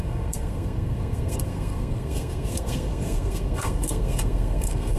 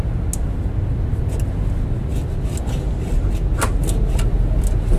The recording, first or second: second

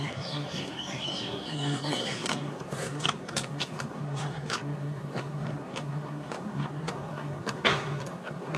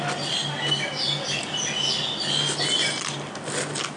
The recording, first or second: second